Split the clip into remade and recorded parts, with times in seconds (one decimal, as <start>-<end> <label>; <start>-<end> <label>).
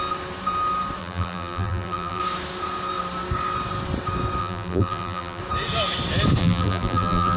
0.0-1.0 recorded; 1.0-2.2 remade; 2.2-4.4 recorded; 4.4-5.4 remade; 5.4-6.4 recorded; 6.4-7.4 remade